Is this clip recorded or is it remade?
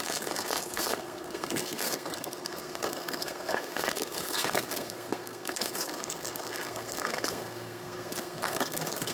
remade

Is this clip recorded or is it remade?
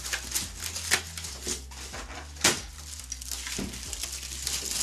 recorded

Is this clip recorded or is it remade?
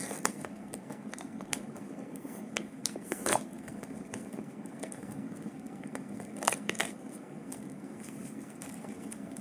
remade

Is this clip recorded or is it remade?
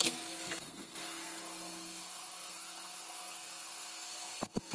remade